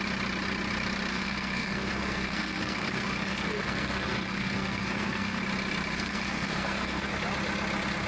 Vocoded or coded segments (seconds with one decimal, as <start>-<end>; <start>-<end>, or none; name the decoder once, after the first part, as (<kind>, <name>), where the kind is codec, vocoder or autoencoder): 1.1-5.4 (codec, SNAC); 5.9-7.1